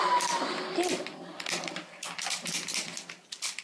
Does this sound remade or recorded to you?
recorded